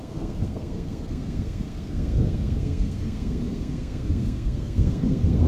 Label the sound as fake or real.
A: fake